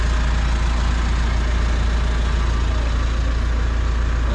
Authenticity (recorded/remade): recorded